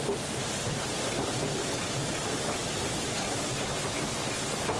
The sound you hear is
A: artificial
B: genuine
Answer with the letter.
B